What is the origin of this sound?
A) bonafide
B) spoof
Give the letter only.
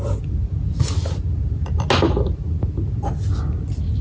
A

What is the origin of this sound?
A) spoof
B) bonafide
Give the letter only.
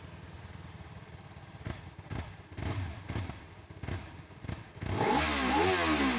B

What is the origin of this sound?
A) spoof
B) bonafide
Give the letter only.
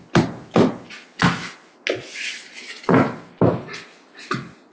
B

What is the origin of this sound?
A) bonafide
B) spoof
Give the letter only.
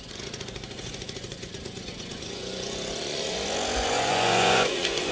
B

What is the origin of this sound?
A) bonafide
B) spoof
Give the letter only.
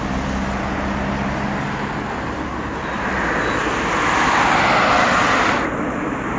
A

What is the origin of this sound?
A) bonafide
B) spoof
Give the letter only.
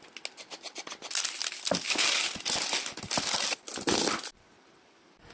A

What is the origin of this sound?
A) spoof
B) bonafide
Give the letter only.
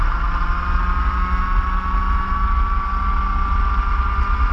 B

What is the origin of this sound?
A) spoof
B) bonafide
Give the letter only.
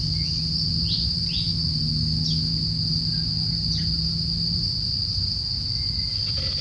B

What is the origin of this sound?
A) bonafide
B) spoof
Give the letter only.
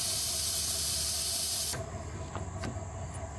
A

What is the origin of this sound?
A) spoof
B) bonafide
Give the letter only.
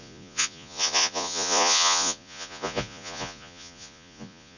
A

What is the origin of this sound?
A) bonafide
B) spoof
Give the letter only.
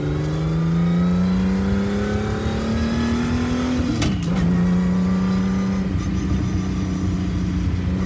A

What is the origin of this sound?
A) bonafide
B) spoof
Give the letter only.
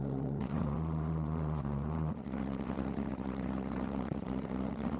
B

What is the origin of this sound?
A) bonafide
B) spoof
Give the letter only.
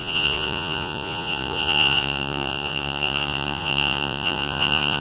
B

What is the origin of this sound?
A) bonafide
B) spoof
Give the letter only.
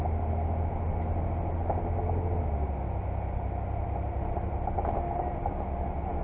A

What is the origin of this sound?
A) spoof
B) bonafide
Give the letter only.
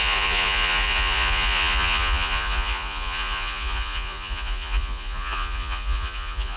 A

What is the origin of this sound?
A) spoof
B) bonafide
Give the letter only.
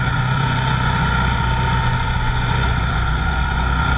A